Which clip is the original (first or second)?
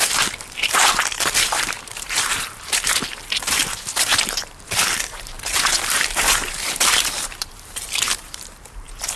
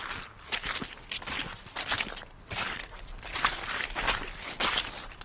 second